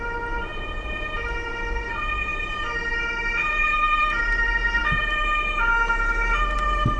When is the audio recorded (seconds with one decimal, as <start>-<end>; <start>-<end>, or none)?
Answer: 0.0-0.5; 1.5-7.0

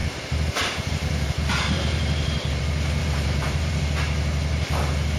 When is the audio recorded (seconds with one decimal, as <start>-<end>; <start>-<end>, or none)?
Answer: 2.6-3.0; 3.8-5.2

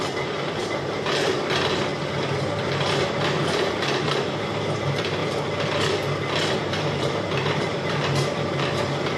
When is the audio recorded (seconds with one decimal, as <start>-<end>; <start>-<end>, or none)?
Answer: 1.9-2.5; 5.2-6.6

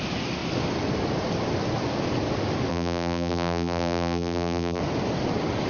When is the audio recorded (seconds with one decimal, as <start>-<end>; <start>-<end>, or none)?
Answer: 0.0-2.7; 4.8-5.7